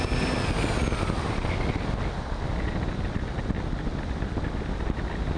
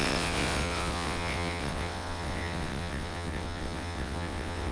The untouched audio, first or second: first